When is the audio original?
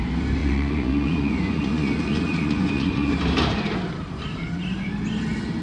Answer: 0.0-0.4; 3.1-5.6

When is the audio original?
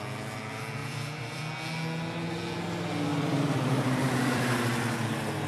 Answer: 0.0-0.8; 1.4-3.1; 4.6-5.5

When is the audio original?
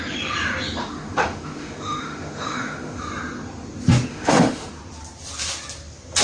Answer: 0.0-0.8; 3.0-4.1; 4.7-6.2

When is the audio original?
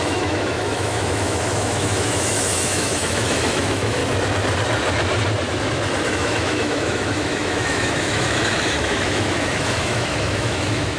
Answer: 4.0-6.1